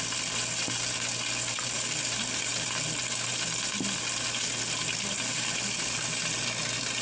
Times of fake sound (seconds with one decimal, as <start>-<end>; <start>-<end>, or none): none